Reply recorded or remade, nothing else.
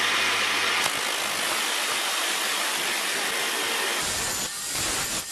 recorded